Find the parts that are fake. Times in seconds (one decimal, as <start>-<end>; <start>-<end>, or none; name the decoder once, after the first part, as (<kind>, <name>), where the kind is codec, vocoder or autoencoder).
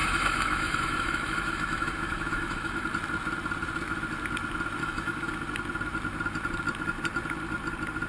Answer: 0.0-2.8 (autoencoder, DAC-VAE); 4.8-5.3